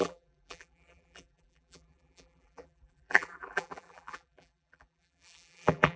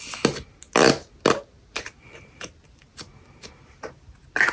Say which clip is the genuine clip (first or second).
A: second